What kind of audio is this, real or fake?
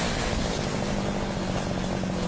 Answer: real